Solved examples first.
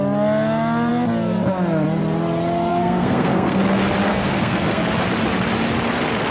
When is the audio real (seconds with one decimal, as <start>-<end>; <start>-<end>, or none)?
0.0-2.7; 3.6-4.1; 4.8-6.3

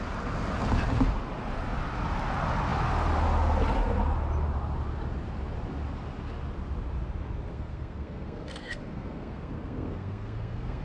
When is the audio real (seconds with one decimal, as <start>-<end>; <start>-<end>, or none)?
0.0-7.5

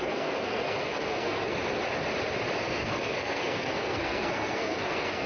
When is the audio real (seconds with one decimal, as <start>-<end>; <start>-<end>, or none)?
1.6-2.6

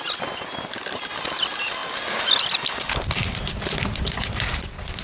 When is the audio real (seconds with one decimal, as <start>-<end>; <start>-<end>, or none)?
0.0-5.0

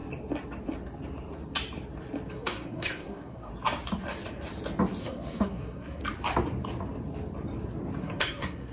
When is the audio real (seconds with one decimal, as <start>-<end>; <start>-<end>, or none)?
0.0-2.3; 3.5-5.0; 6.0-8.0

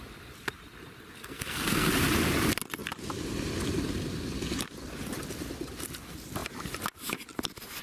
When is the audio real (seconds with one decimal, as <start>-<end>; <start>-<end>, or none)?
0.0-1.2; 1.9-7.8